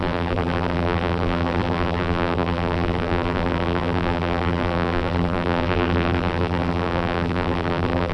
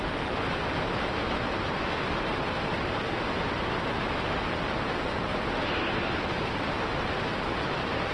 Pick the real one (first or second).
second